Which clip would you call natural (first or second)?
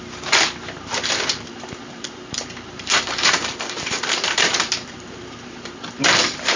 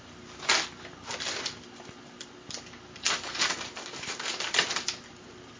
second